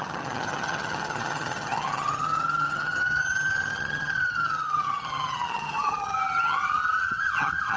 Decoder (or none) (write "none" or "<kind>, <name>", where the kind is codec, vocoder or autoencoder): vocoder, HiFi-GAN